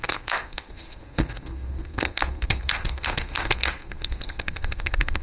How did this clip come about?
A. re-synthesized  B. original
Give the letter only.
A